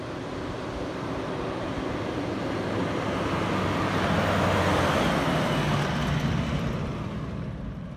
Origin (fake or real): real